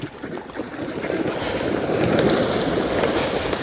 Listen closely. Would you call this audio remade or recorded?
recorded